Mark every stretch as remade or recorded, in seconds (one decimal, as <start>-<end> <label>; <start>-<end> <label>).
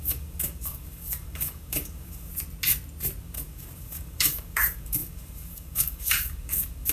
0.0-2.3 remade; 2.3-3.2 recorded; 3.2-6.9 remade